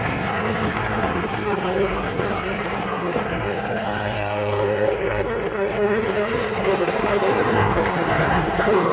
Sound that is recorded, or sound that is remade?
remade